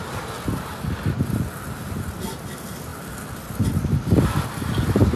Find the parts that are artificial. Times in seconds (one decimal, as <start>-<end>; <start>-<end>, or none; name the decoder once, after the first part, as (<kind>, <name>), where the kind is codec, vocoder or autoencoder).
none